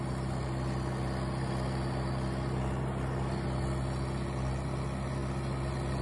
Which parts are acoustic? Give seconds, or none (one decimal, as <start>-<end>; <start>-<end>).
0.0-6.0